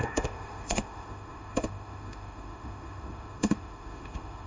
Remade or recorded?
remade